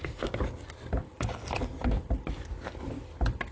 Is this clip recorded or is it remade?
recorded